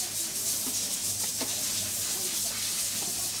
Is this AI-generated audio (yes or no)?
no